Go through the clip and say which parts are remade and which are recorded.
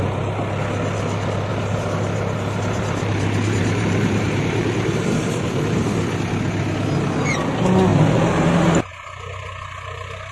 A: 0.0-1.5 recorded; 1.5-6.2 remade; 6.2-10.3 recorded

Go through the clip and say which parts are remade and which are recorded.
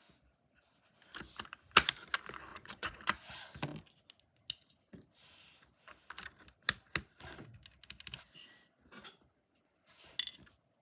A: 0.0-2.5 recorded; 2.5-3.0 remade; 3.0-10.8 recorded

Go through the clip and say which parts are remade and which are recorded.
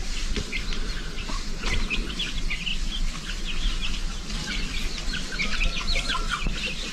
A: 0.0-2.7 remade; 2.7-5.0 recorded; 5.0-6.9 remade